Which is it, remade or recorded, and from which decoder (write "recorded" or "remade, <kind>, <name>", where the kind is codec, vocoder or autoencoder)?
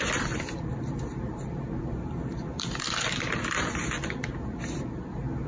remade, vocoder, BigVGAN v2